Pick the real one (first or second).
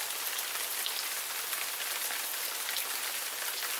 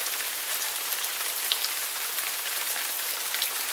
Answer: first